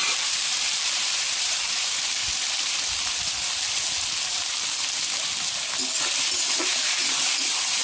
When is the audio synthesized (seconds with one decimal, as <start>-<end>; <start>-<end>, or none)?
0.0-2.2; 6.9-7.8

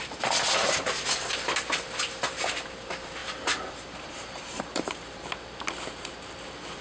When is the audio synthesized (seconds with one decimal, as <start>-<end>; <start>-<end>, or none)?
3.2-5.3

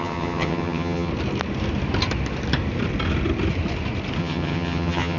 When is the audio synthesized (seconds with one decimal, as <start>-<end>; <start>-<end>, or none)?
0.0-1.1; 4.2-5.2

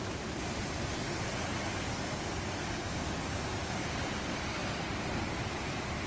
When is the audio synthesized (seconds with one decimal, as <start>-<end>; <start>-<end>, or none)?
4.6-6.1

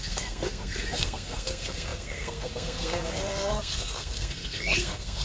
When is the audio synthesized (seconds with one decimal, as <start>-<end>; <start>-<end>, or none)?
0.0-5.2

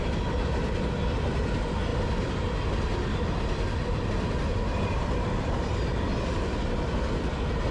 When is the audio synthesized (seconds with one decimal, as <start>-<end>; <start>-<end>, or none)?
1.9-3.4; 4.5-6.0